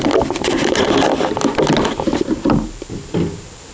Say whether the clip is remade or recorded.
recorded